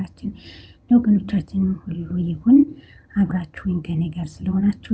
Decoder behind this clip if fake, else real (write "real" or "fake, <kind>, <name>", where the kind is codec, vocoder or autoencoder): fake, vocoder, HiFi-GAN